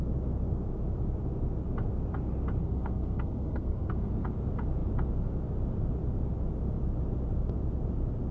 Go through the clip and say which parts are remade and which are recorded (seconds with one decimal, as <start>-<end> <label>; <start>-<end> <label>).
0.0-2.6 recorded; 2.6-4.1 remade; 4.1-8.3 recorded